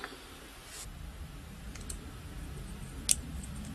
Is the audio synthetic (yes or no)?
no